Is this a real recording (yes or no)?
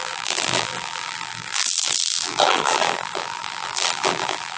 no